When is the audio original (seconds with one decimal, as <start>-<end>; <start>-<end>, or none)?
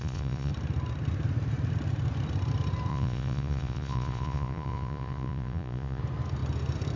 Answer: 0.5-2.9; 6.0-7.0